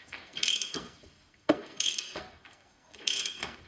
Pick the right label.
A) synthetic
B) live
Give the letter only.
A